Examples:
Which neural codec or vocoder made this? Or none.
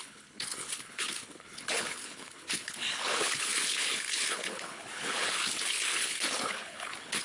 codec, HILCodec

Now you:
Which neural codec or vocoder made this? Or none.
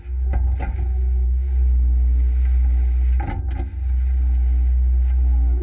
none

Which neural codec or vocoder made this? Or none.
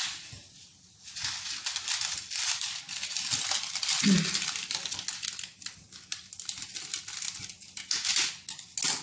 none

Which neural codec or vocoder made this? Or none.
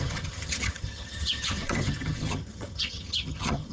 vocoder, HiFi-GAN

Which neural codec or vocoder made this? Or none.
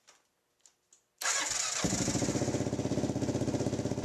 none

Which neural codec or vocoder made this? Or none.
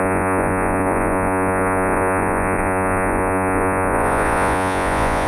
vocoder, Vocos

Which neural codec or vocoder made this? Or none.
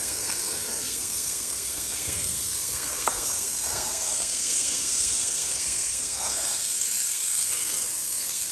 codec, SNAC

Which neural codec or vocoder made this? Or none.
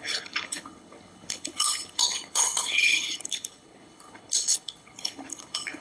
codec, HILCodec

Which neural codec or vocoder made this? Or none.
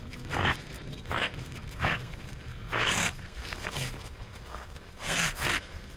codec, SNAC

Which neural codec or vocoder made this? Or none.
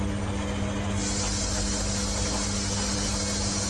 none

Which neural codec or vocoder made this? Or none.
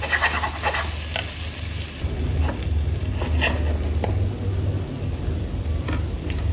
none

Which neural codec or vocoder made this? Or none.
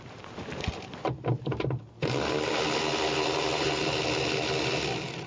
none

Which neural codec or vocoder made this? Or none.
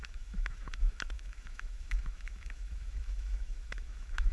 autoencoder, DAC-VAE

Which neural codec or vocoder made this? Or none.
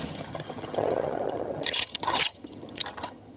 vocoder, HiFi-GAN